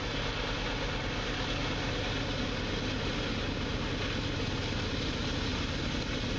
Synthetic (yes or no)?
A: no